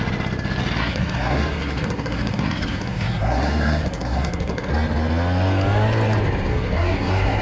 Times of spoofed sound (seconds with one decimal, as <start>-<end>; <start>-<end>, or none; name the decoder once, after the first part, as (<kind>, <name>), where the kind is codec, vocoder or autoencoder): 0.8-4.7 (codec, SNAC); 6.5-7.4